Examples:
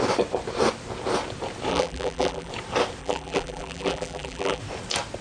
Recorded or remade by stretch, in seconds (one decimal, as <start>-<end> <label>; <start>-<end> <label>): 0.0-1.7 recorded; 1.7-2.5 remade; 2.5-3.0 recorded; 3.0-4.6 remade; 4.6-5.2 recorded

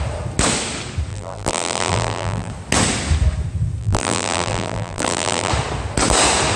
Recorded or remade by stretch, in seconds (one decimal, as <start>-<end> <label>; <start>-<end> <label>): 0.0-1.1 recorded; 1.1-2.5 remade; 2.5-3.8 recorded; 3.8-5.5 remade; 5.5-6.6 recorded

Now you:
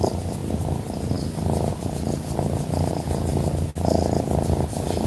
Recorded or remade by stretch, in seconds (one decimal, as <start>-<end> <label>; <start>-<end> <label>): 0.0-0.4 remade; 0.4-1.7 recorded; 1.7-3.3 remade; 3.3-5.1 recorded

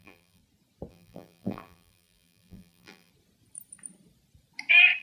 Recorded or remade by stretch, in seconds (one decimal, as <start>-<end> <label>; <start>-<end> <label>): 0.0-0.4 remade; 0.4-0.9 recorded; 0.9-3.1 remade; 3.1-5.0 recorded